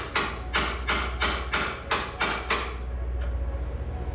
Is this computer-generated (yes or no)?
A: no